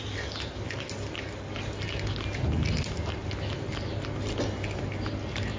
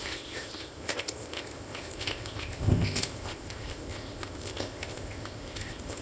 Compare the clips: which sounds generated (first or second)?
second